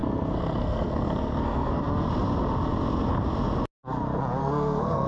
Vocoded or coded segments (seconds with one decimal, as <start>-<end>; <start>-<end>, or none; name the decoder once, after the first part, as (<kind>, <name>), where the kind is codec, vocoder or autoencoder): 0.0-1.8 (codec, SNAC); 4.4-5.1